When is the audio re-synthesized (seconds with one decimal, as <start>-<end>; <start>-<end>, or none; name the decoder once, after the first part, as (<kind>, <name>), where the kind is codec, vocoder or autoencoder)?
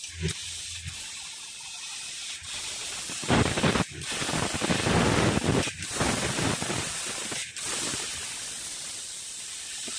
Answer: none